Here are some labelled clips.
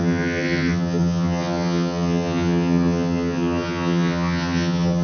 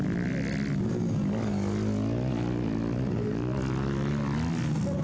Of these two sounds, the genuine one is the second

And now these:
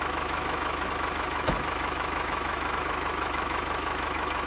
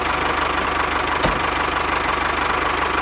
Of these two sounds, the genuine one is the second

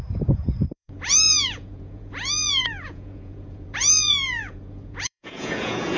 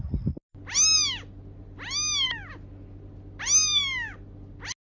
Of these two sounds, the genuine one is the second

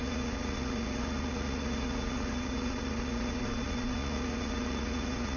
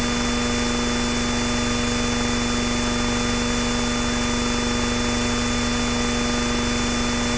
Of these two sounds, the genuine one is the second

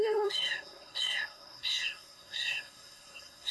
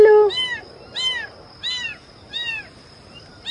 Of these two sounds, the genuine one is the second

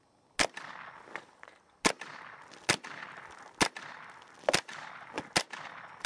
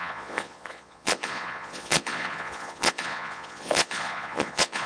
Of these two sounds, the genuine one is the first